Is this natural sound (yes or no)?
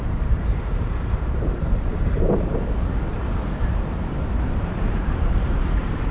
no